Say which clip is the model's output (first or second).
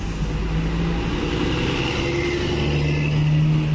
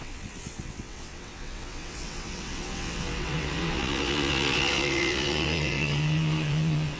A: second